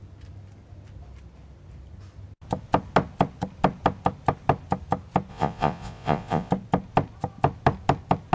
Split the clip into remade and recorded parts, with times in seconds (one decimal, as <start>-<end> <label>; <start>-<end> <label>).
0.0-5.3 recorded; 5.3-6.5 remade; 6.5-8.3 recorded